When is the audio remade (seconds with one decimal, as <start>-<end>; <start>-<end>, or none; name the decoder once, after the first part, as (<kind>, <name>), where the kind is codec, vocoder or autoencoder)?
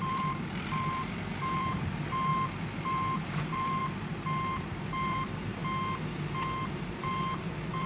0.0-2.3 (vocoder, BigVGAN v2); 3.2-3.8; 4.8-5.6; 6.7-7.9